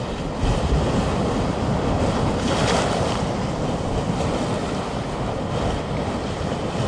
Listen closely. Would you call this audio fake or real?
real